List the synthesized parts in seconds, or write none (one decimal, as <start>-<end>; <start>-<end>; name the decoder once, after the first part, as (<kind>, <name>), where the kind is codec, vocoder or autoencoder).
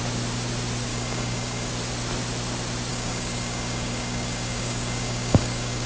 0.9-1.7 (codec, DAC); 2.9-5.9